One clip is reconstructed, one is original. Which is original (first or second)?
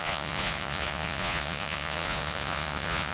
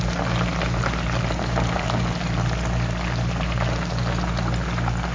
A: second